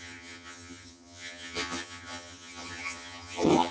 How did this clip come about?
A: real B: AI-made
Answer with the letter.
B